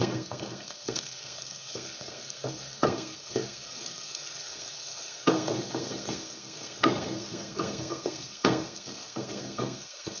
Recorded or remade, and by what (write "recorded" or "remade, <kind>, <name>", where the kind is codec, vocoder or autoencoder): remade, codec, SNAC